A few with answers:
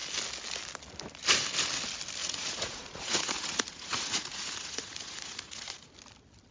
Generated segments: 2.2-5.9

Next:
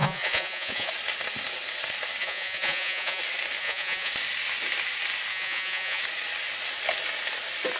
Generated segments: 0.0-0.9; 2.2-3.2; 3.6-4.1; 5.3-6.0

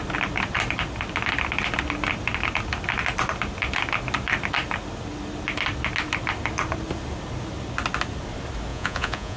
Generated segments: 8.7-9.4